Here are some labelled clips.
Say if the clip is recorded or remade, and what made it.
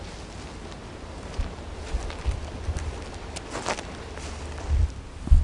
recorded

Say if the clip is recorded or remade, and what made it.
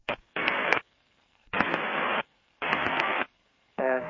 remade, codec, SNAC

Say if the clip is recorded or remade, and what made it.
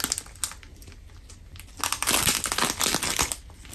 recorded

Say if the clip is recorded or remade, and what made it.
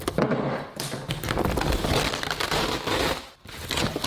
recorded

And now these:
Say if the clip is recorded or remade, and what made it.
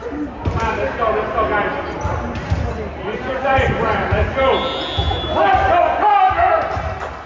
recorded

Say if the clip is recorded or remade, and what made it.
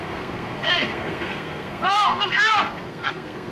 remade, codec, SNAC